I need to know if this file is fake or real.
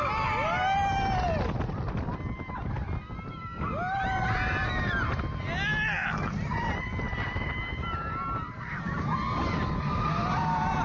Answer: real